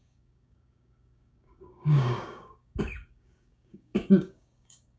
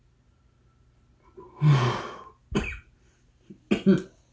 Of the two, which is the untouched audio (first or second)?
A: second